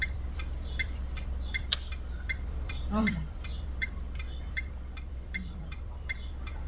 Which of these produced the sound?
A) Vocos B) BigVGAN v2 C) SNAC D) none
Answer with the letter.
B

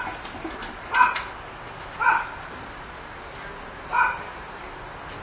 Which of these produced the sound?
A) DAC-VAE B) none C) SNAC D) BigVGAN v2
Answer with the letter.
B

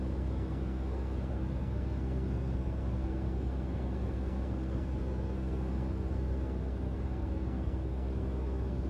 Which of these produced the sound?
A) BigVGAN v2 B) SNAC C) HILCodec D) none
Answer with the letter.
B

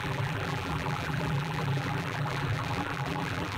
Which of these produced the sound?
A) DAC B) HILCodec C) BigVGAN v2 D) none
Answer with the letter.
C